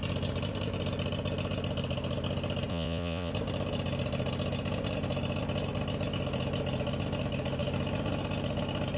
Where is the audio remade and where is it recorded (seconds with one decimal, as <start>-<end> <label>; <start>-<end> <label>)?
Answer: 0.0-2.7 recorded; 2.7-3.3 remade; 3.3-9.0 recorded